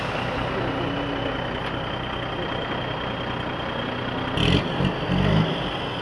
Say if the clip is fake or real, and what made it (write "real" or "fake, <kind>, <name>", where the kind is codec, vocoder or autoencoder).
real